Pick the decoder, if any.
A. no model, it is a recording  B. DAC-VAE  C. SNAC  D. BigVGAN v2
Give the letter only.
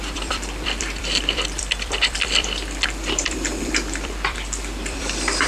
D